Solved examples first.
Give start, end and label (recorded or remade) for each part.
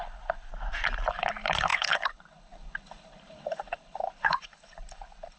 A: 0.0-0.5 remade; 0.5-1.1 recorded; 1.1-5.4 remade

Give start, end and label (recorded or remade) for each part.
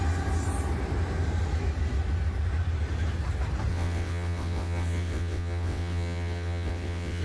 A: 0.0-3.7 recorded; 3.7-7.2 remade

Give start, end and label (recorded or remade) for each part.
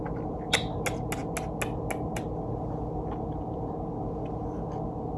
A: 0.0-5.2 recorded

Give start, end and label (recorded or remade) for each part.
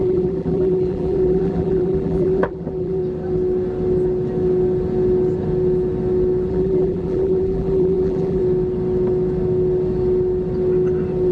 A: 0.0-3.0 remade; 3.0-6.5 recorded; 6.5-8.4 remade; 8.4-11.3 recorded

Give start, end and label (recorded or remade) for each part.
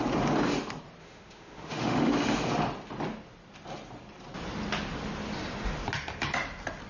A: 0.0-1.0 recorded; 1.0-2.1 remade; 2.1-6.9 recorded